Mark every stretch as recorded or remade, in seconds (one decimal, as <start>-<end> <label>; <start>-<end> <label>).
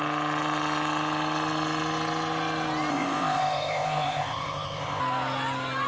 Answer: 0.0-2.9 recorded; 2.9-5.0 remade; 5.0-5.9 recorded